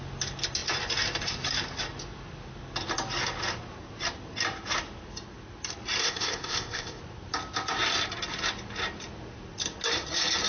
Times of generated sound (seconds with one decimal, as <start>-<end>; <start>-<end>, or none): 6.0-7.0